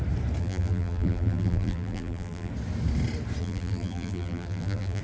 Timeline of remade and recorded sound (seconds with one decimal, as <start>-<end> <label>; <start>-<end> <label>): 0.0-0.4 recorded; 0.4-2.5 remade; 2.5-3.4 recorded; 3.4-5.0 remade